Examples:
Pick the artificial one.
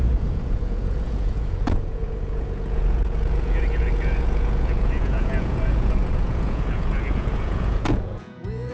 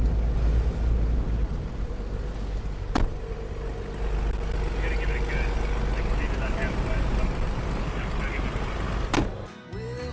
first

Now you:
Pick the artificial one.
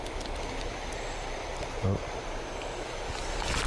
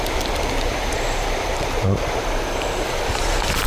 second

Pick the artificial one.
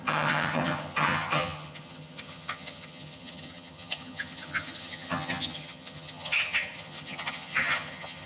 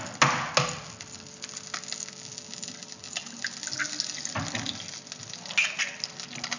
first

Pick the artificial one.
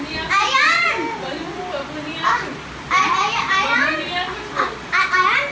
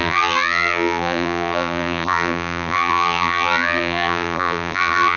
second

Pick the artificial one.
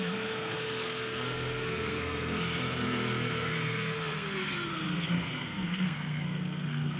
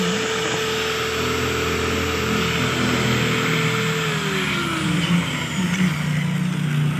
first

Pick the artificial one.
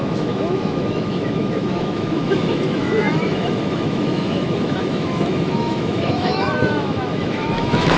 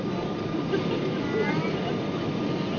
first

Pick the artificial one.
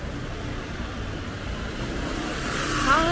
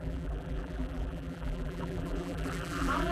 second